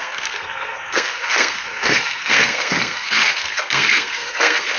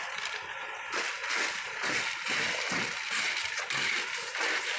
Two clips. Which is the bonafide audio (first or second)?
second